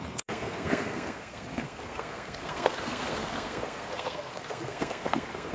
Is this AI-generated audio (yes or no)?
yes